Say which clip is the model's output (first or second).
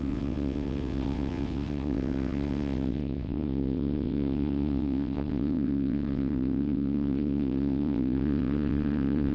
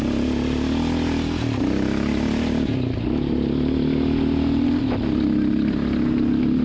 first